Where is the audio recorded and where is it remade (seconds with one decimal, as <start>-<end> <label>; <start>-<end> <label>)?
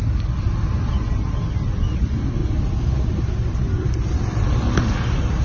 0.0-5.4 recorded